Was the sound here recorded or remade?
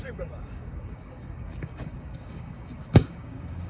remade